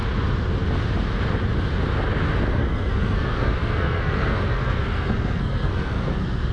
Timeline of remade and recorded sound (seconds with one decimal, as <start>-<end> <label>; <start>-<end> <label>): 0.0-2.5 recorded; 2.5-6.5 remade